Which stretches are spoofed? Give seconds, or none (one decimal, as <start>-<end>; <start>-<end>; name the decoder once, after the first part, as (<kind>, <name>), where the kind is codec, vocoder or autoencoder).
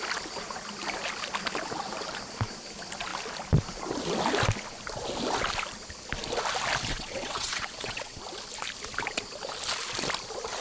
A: 6.9-8.2 (vocoder, WaveNeXt)